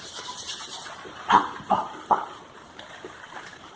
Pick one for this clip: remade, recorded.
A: remade